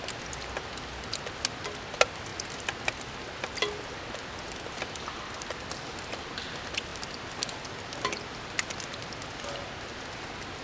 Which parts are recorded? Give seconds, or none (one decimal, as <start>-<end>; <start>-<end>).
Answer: 0.0-10.6